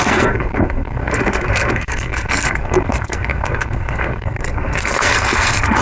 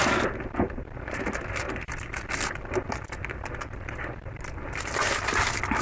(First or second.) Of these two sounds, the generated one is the first